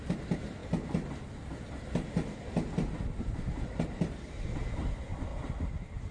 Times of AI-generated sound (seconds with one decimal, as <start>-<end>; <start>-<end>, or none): none